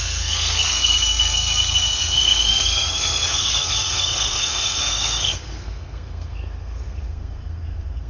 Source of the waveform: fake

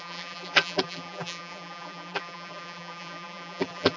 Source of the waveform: fake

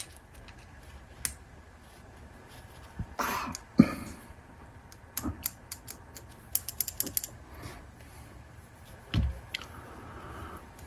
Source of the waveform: real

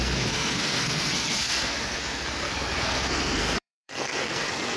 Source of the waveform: fake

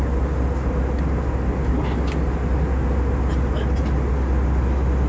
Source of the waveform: real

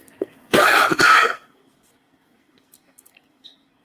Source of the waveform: fake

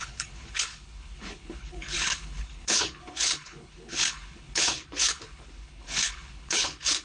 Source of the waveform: fake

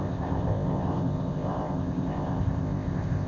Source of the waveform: fake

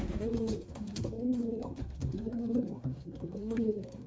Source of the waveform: fake